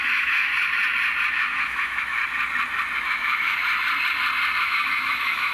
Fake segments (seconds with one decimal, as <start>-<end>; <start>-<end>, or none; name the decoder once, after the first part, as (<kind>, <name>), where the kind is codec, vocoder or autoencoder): 0.0-0.5 (autoencoder, DAC-VAE); 1.3-2.2; 3.0-3.6; 4.6-5.5